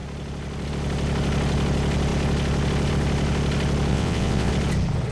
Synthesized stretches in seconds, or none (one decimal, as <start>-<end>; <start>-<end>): 3.9-4.5